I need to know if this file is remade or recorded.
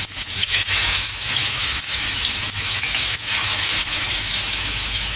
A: remade